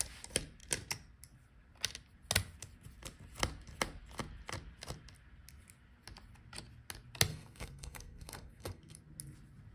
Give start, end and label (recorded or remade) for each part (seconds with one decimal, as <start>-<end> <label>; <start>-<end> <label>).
0.0-7.3 recorded; 7.3-9.0 remade; 9.0-9.7 recorded